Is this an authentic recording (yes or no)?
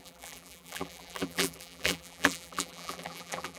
no